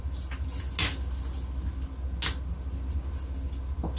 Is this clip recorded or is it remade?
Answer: recorded